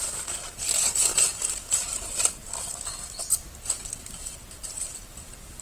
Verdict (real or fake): real